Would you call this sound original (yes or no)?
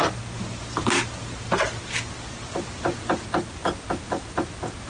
yes